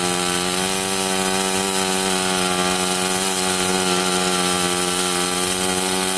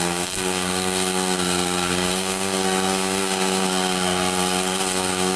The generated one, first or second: second